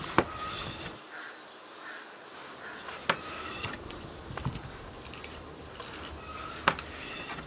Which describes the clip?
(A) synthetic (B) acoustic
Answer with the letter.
B